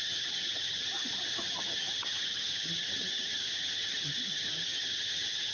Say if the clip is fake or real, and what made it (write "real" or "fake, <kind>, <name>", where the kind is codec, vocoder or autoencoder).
fake, vocoder, HiFi-GAN